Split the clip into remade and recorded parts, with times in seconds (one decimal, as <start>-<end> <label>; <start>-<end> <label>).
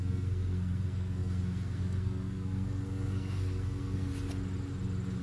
0.0-4.1 remade; 4.1-5.2 recorded